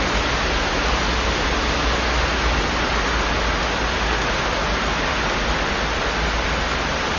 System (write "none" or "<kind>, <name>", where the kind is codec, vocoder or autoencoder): none